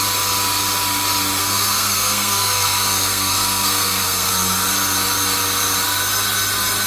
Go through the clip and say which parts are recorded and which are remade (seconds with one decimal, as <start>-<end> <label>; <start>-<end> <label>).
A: 0.0-1.4 recorded; 1.4-4.3 remade; 4.3-6.9 recorded